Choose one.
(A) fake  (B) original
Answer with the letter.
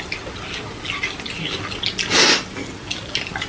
B